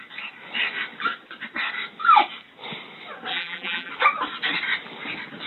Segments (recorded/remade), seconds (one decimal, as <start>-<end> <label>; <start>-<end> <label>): 0.0-3.3 recorded; 3.3-3.9 remade; 3.9-5.5 recorded